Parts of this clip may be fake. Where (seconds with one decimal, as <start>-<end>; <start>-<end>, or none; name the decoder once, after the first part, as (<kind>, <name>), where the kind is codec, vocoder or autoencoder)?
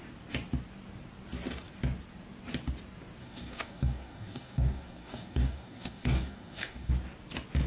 3.2-6.9 (codec, DAC)